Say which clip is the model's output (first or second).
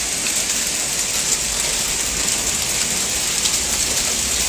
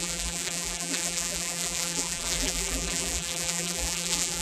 second